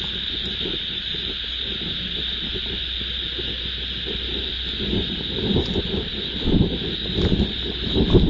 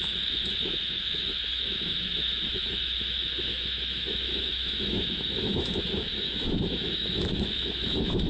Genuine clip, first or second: first